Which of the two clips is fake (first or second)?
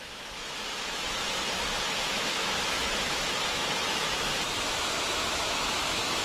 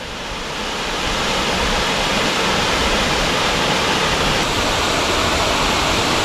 first